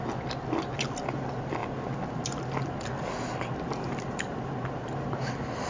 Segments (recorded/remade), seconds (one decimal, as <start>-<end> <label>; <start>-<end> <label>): 0.0-5.7 recorded